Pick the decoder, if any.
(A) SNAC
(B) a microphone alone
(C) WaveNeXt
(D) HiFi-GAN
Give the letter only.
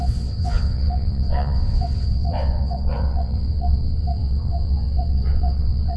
C